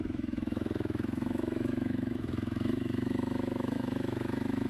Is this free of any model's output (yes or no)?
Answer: no